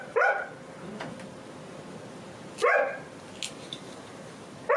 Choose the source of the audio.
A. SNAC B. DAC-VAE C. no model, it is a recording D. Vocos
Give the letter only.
C